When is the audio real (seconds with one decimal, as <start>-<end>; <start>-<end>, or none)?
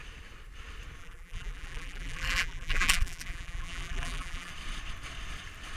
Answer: 0.0-1.0; 4.5-5.8